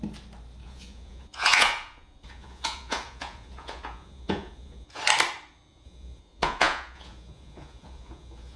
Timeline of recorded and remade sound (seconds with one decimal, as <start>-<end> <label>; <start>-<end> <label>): 0.0-0.6 recorded; 0.6-5.0 remade; 5.0-5.7 recorded; 5.7-8.6 remade